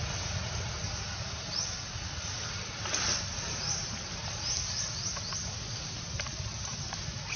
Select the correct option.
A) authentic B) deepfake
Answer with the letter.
A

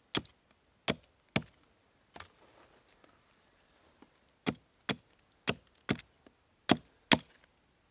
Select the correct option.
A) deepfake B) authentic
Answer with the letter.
B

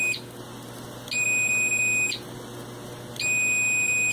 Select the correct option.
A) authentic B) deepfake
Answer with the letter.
A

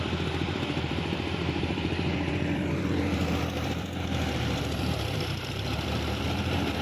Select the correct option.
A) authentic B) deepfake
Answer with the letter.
B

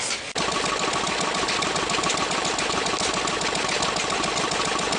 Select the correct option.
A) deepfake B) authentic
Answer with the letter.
B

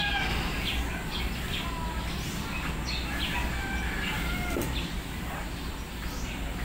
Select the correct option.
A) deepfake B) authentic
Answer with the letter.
B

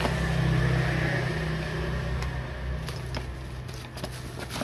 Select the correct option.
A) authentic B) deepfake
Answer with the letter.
A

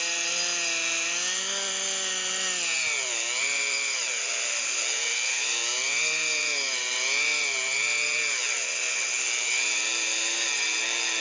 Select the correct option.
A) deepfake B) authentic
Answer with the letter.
A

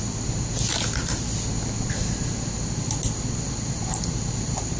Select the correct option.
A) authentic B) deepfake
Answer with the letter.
A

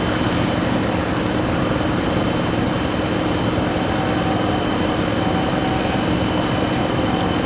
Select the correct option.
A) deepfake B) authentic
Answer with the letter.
B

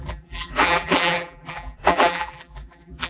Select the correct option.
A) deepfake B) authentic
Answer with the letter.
A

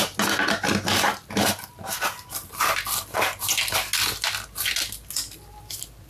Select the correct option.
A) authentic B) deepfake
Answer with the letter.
A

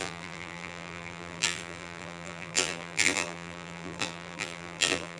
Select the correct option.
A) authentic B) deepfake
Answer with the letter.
B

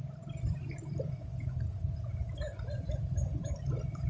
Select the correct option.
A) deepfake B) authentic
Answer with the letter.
A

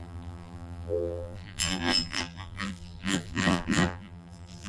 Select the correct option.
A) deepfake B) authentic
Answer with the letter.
A